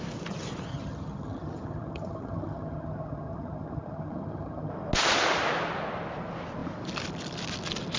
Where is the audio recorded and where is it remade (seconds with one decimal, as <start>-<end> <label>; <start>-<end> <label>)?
0.0-0.7 recorded; 0.7-4.7 remade; 4.7-8.0 recorded